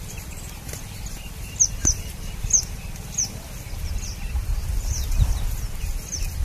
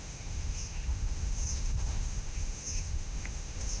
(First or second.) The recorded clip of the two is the first